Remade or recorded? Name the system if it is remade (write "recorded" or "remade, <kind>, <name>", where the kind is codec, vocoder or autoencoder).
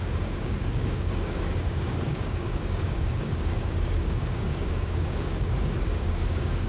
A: remade, codec, DAC